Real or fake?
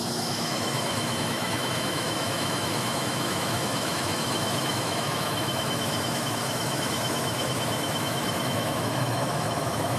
fake